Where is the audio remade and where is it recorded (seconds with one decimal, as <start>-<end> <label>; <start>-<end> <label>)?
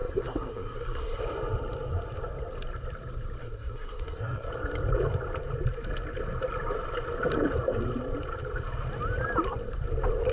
0.0-1.2 remade; 1.2-3.4 recorded; 3.4-4.5 remade; 4.5-10.3 recorded